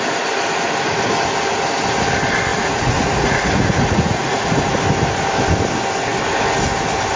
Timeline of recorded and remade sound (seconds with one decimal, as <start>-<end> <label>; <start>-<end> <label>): 0.0-2.5 recorded; 2.5-4.7 remade; 4.7-7.2 recorded